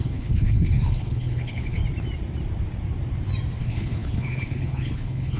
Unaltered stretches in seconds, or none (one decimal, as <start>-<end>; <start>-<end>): 1.8-3.6